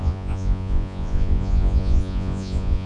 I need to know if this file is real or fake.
fake